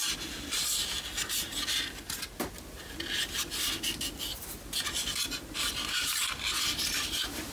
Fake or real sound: real